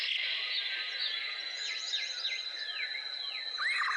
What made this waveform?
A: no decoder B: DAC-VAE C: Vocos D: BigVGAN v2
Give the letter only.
A